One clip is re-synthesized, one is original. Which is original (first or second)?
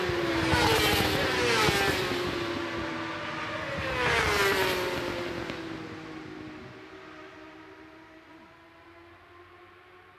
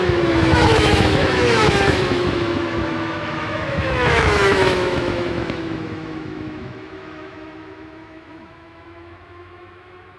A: first